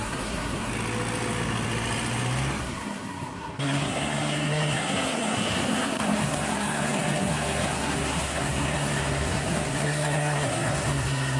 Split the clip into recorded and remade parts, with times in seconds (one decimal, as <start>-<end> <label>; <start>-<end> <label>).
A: 0.0-0.7 remade; 0.7-2.6 recorded; 2.6-11.4 remade